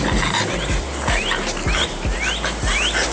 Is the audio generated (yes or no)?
no